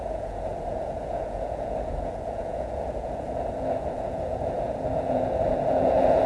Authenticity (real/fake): fake